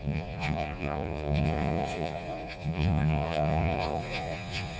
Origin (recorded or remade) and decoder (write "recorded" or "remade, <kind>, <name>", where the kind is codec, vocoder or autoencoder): remade, vocoder, Vocos